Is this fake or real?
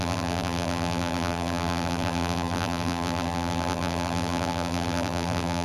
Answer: fake